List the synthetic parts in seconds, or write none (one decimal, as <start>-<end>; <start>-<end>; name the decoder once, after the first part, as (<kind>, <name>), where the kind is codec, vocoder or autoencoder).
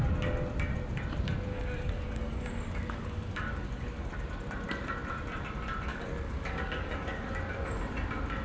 1.5-4.1 (codec, DAC); 5.9-7.4